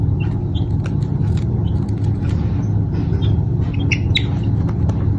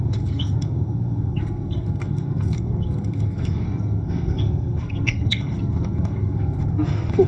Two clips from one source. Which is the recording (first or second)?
first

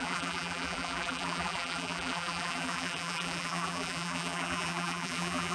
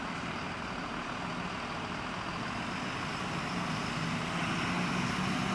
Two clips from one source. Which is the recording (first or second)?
second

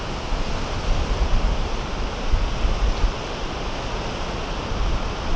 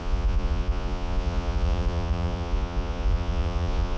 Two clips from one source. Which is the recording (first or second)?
first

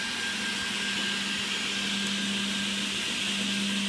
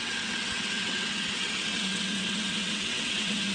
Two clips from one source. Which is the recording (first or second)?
first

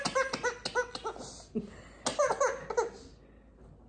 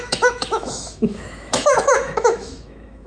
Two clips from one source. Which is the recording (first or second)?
first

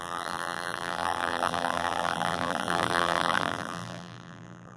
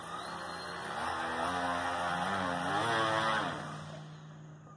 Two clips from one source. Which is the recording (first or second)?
second